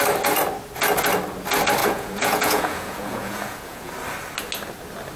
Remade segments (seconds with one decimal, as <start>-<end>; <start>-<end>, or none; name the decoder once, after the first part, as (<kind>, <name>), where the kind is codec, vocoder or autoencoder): 1.8-3.9 (vocoder, Vocos)